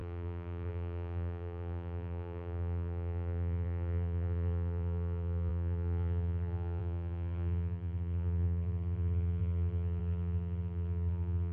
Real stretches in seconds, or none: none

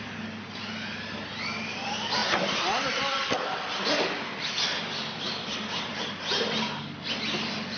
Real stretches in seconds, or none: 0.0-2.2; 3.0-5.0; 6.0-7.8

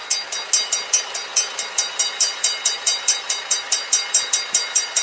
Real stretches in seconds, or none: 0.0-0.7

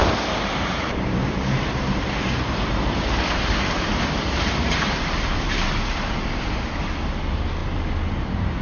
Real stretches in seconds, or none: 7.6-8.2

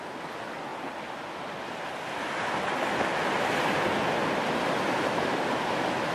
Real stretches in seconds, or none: 0.0-6.1

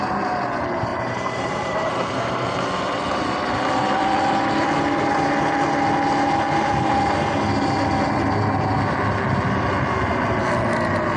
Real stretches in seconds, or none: 0.0-0.9; 2.6-11.2

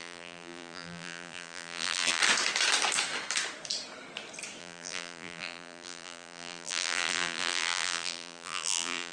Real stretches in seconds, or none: 2.2-4.6